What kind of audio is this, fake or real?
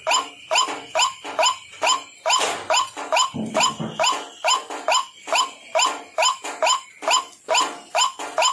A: real